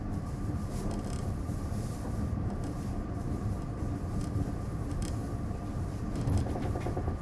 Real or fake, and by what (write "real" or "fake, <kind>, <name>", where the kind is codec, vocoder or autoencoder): fake, vocoder, BigVGAN v2